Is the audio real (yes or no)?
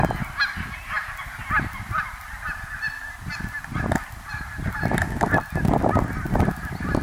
yes